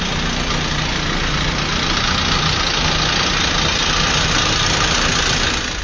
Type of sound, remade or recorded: recorded